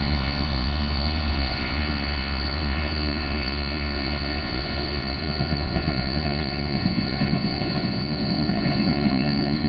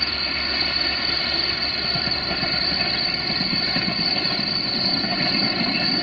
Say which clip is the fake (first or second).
first